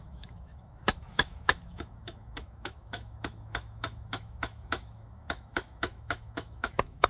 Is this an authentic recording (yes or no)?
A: no